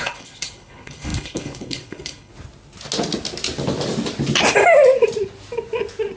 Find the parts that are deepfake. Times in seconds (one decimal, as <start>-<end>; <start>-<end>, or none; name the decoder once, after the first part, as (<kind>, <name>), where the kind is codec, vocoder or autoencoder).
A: 0.0-2.3 (codec, HILCodec)